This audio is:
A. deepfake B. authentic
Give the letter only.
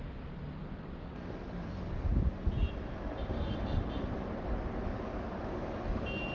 B